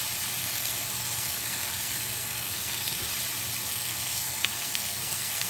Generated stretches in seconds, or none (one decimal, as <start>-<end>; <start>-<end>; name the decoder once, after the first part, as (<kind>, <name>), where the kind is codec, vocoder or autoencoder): 0.4-3.1 (codec, SNAC); 3.6-5.5